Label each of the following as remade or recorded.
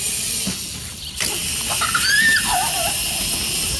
recorded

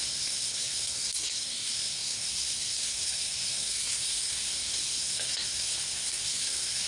remade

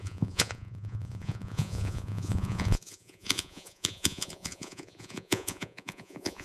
remade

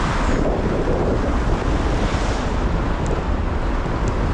recorded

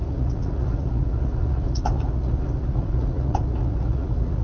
remade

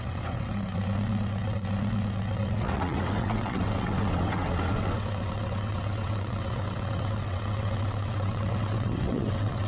remade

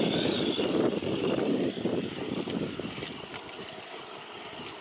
remade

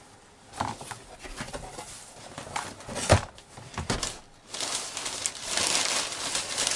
recorded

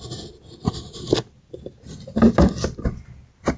recorded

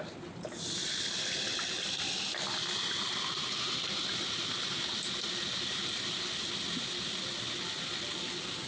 recorded